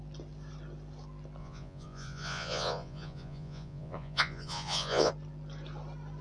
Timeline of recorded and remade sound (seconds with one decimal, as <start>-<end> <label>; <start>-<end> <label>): 0.0-1.4 recorded; 1.4-5.1 remade; 5.1-6.2 recorded